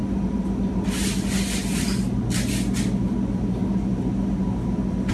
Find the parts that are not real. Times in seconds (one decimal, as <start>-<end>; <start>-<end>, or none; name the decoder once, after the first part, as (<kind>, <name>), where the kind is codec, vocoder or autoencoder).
none